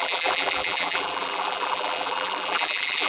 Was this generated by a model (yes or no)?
yes